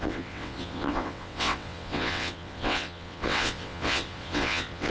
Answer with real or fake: fake